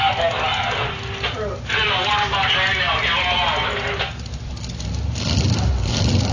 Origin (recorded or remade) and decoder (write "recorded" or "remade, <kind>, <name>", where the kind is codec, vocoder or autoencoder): recorded